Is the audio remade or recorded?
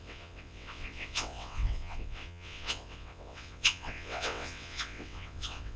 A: remade